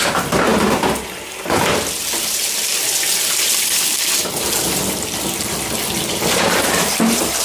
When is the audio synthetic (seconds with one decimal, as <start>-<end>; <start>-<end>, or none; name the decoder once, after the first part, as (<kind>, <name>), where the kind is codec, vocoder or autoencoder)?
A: 0.0-0.5 (vocoder, BigVGAN v2); 2.2-7.4